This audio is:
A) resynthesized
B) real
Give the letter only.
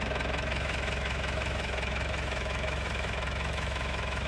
A